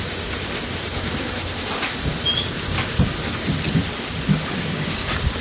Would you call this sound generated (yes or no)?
no